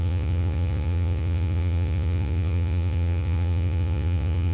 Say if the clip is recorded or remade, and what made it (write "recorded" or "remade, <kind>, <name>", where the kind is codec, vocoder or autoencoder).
remade, vocoder, Vocos